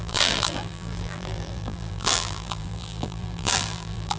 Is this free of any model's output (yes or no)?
no